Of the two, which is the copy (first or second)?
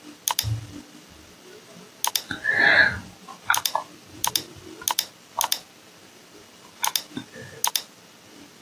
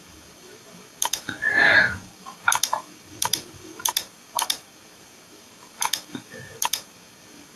second